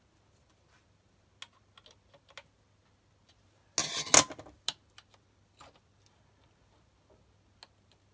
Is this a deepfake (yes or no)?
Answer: no